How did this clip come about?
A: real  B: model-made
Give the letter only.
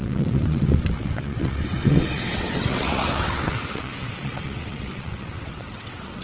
B